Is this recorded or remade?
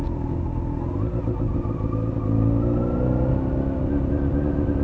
recorded